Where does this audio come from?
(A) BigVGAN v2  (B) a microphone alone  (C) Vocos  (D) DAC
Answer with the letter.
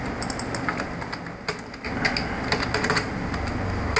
B